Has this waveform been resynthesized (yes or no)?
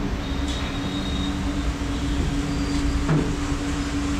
no